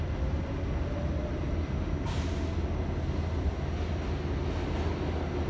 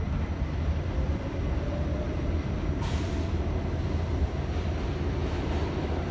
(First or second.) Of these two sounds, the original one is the first